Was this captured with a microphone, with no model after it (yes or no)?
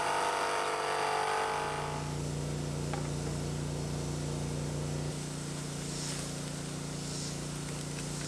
yes